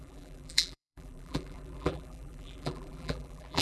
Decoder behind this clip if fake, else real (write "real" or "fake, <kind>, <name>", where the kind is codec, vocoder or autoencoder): fake, vocoder, BigVGAN v2